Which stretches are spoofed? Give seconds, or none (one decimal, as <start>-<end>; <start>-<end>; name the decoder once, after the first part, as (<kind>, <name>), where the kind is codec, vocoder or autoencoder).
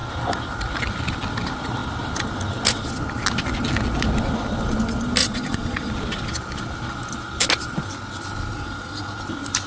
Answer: 5.2-5.9 (vocoder, Vocos); 8.5-9.2